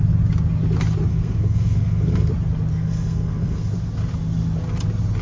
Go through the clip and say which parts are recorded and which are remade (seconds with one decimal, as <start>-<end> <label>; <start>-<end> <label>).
0.0-1.1 recorded; 1.1-2.3 remade; 2.3-2.7 recorded; 2.7-3.7 remade; 3.7-5.2 recorded